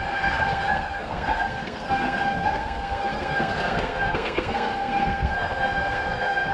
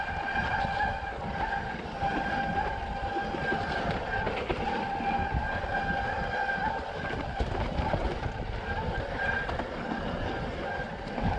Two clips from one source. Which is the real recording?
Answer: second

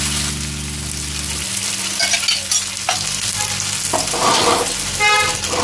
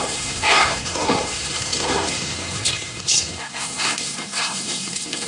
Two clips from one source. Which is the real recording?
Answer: first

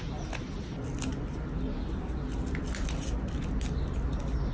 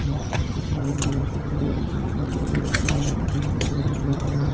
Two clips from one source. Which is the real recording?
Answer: first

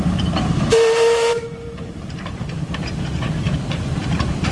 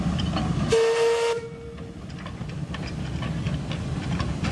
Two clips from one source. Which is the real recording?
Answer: second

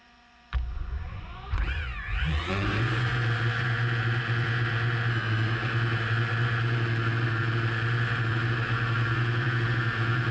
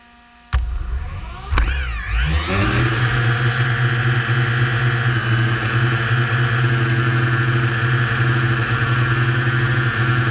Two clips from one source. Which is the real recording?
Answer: second